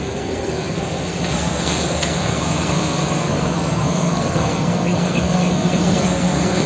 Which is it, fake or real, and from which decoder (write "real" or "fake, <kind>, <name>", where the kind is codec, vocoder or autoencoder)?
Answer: fake, codec, SNAC